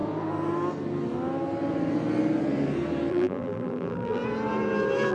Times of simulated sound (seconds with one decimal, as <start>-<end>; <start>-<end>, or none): 3.1-4.2